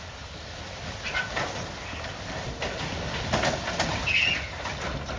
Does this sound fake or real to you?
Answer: real